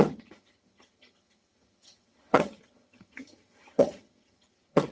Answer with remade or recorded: remade